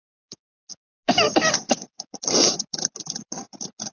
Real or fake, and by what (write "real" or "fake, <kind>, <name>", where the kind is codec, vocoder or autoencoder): real